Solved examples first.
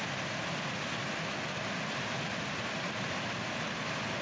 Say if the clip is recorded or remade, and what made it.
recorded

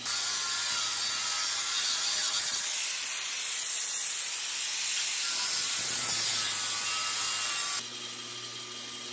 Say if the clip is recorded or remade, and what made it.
recorded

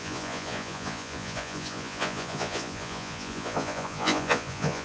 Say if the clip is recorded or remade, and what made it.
remade, vocoder, Vocos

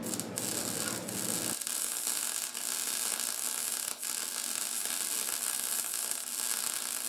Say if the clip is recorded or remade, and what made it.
recorded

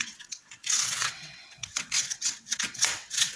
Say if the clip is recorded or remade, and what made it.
remade, vocoder, WaveNeXt